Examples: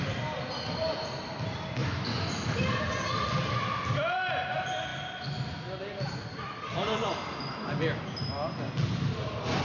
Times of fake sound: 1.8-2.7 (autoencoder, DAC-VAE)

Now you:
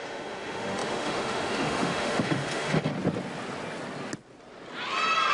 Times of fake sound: 0.0-2.9 (autoencoder, DAC-VAE)

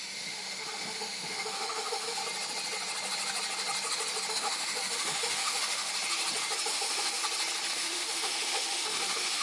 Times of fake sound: 0.0-2.2 (autoencoder, DAC-VAE); 4.3-5.9; 6.7-7.2; 7.7-9.4

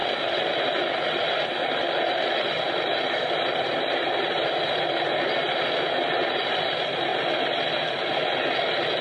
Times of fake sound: none

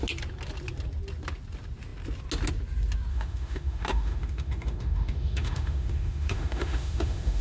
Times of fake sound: 3.1-7.4 (autoencoder, DAC-VAE)

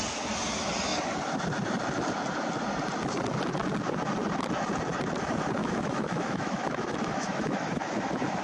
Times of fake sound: 5.6-8.4 (autoencoder, DAC-VAE)